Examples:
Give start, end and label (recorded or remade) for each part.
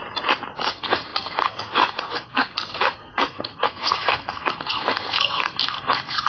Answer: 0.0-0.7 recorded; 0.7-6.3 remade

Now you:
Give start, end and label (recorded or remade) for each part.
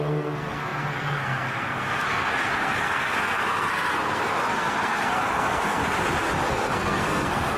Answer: 0.0-5.8 remade; 5.8-6.5 recorded; 6.5-7.6 remade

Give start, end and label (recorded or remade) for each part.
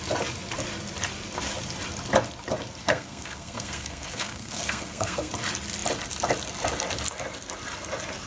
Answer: 0.0-2.8 recorded; 2.8-5.3 remade; 5.3-8.3 recorded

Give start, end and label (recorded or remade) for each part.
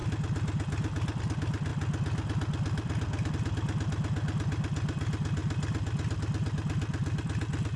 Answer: 0.0-7.8 recorded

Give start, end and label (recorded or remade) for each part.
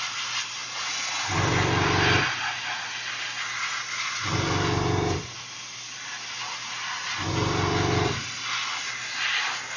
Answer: 0.0-9.8 recorded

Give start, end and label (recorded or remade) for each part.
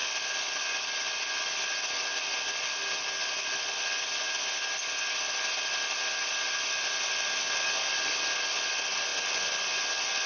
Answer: 0.0-10.3 recorded